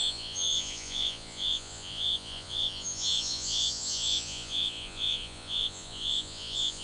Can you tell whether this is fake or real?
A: fake